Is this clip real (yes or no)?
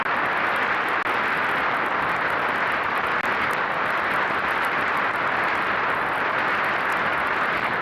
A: yes